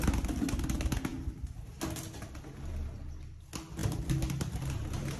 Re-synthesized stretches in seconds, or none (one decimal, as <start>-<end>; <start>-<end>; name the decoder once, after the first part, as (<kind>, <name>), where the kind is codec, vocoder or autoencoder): none